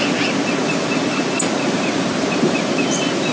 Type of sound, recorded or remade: recorded